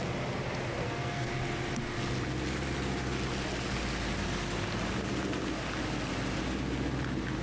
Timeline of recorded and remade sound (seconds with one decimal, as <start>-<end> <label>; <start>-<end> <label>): 0.0-0.8 recorded; 0.8-1.3 remade; 1.3-7.4 recorded